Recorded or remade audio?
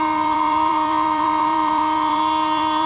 remade